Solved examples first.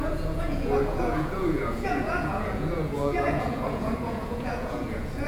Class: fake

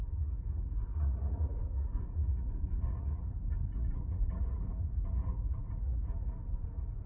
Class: fake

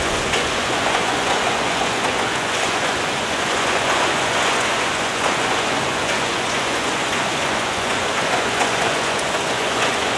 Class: fake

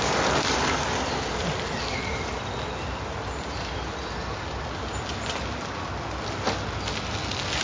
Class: real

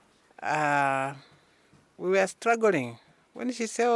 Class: real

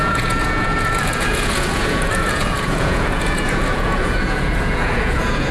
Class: fake